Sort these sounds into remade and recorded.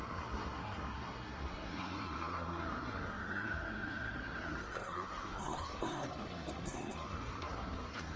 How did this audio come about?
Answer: remade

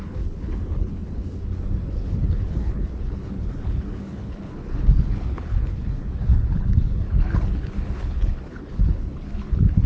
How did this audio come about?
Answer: remade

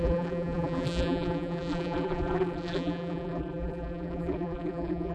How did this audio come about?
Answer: remade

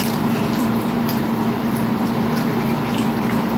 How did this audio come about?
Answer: remade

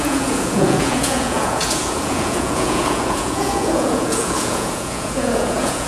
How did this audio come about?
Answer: remade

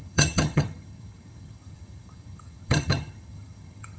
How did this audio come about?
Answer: remade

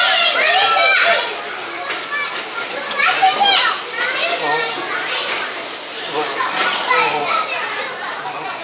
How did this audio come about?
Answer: recorded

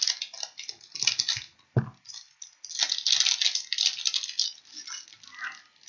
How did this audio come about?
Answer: recorded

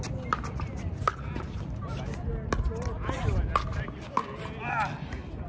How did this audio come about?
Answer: recorded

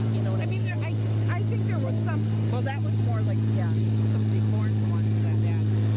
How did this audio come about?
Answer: recorded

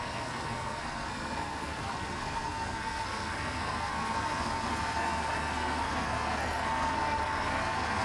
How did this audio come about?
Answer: remade